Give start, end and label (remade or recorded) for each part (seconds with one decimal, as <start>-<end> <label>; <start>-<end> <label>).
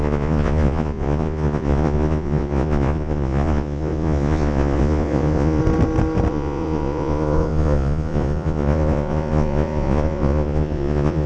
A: 0.0-5.6 remade; 5.6-6.3 recorded; 6.3-11.3 remade